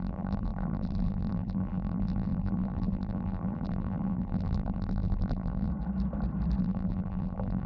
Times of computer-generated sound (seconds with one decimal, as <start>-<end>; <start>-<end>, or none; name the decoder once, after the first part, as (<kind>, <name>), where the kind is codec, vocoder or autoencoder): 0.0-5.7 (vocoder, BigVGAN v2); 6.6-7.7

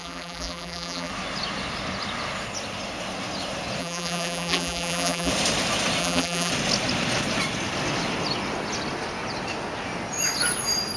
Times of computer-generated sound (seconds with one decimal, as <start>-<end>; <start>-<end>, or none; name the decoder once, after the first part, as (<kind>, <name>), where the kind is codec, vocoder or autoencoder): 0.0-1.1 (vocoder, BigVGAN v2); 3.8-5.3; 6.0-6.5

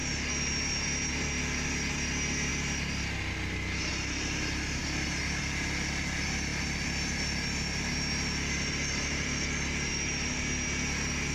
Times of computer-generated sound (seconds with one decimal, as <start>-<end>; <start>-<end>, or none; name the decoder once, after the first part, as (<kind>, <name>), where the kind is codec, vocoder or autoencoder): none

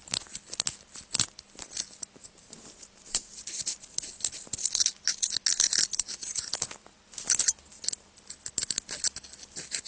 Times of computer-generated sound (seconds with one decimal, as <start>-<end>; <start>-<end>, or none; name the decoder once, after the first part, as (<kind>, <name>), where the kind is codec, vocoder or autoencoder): 2.2-3.6 (vocoder, BigVGAN v2)